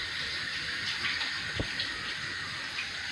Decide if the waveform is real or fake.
real